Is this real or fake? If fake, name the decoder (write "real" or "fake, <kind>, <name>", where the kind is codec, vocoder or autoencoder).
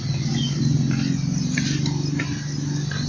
real